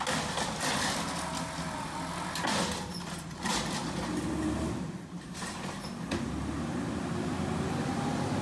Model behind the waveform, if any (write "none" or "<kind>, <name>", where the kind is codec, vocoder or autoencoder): none